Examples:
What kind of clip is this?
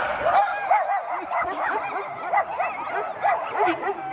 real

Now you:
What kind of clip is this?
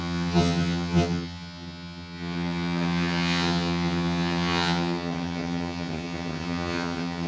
fake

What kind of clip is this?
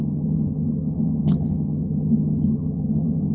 fake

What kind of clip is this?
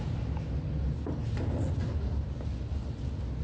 real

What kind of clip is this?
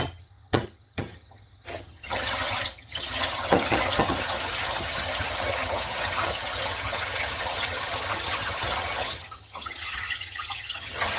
fake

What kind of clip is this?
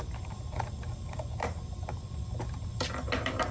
real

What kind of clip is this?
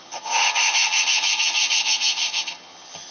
fake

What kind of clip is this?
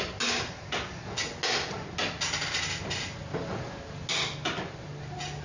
real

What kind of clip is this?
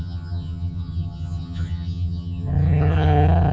fake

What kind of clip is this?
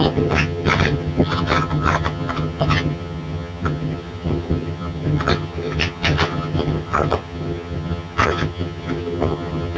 fake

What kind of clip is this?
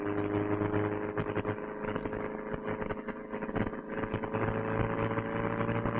real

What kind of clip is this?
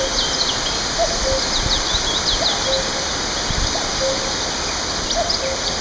real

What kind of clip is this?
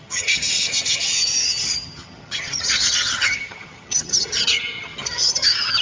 fake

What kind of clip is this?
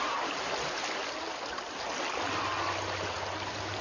real